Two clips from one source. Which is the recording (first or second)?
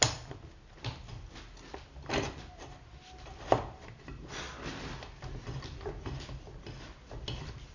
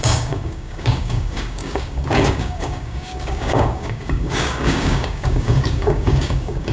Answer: first